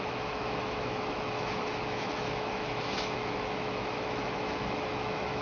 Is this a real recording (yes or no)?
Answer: no